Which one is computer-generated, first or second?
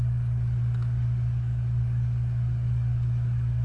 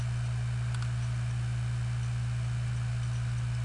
first